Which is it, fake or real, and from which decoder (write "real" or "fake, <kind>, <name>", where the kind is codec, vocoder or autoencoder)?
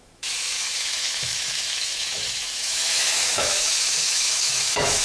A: fake, autoencoder, DAC-VAE